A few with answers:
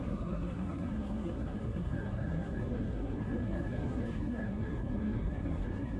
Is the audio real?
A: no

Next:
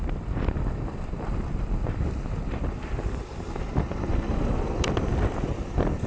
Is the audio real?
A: yes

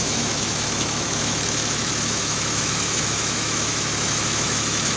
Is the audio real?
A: no